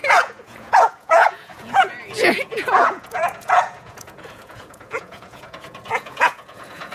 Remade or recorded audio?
remade